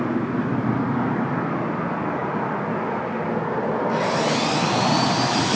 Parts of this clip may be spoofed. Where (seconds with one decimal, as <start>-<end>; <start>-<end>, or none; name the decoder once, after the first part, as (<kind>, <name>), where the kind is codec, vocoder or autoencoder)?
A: none